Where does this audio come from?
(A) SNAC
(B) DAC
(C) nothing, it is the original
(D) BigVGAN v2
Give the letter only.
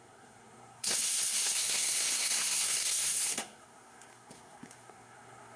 A